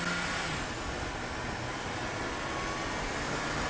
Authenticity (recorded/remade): recorded